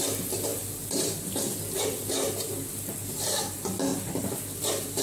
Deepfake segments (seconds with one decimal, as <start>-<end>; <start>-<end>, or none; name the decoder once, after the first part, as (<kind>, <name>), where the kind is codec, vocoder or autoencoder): none